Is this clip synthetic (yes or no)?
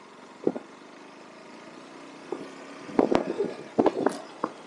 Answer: no